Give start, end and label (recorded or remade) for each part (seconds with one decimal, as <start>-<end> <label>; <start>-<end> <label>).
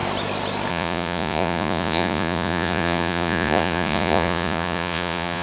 0.0-0.7 recorded; 0.7-5.4 remade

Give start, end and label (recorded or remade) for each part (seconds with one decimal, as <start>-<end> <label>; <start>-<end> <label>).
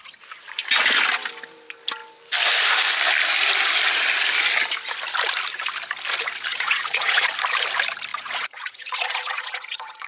0.0-6.5 recorded; 6.5-7.3 remade; 7.3-8.1 recorded; 8.1-10.1 remade